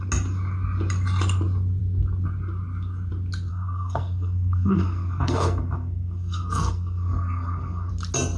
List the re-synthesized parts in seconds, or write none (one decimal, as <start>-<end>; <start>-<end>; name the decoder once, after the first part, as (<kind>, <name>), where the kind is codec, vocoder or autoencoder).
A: 3.5-7.9 (codec, SNAC)